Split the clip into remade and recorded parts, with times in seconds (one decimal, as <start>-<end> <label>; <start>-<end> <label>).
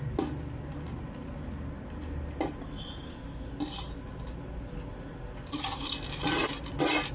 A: 0.0-7.1 recorded